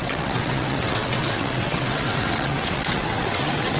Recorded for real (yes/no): no